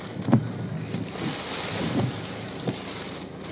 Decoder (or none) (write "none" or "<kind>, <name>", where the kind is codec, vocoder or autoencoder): none